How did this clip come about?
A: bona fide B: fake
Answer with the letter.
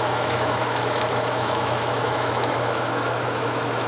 B